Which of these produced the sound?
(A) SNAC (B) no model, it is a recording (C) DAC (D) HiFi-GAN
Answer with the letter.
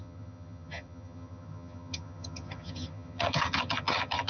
D